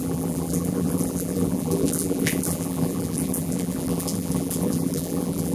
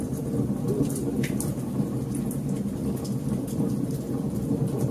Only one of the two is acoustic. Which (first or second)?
second